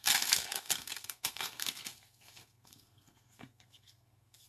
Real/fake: fake